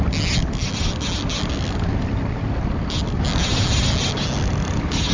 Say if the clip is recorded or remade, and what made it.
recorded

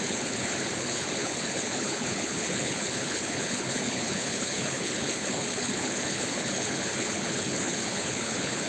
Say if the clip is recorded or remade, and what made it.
remade, codec, HILCodec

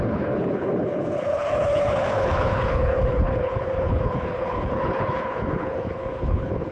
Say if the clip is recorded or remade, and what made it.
remade, codec, HILCodec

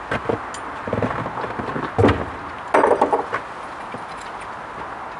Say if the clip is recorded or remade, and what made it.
recorded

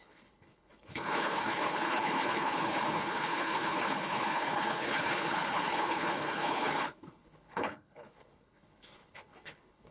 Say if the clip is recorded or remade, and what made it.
remade, codec, HILCodec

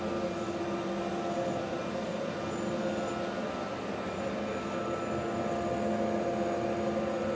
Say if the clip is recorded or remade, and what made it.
recorded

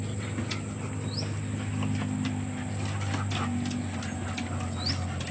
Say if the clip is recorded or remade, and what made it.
recorded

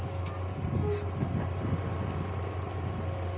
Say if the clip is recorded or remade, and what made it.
recorded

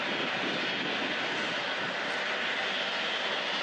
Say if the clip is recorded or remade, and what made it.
recorded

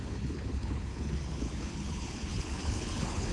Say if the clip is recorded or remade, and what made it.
remade, codec, HILCodec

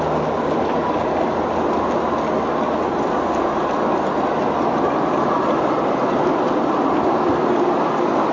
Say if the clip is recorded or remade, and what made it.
recorded